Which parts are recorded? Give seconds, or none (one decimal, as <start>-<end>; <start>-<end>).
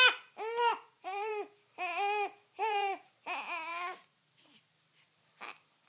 0.0-0.7; 1.3-2.6; 3.1-3.7; 4.3-5.9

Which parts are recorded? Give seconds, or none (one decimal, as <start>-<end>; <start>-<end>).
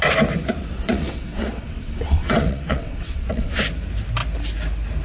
0.0-0.6; 3.6-5.0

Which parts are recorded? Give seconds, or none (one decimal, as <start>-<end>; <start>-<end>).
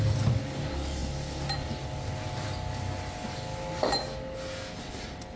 0.0-5.4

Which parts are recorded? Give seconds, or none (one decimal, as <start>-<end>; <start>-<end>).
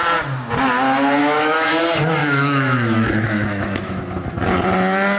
0.0-1.2; 1.8-2.2; 4.0-5.2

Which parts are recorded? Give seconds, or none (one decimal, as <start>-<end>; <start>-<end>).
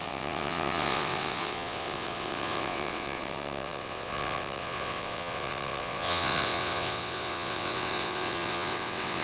none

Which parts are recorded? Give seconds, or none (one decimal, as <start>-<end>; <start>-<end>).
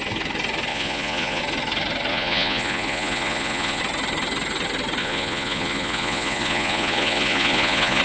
0.0-0.7; 1.4-2.1; 3.8-5.0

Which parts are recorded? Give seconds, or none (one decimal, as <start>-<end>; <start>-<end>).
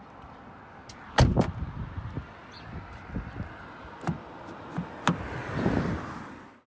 0.0-6.7